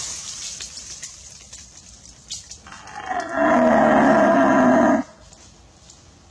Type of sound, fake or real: real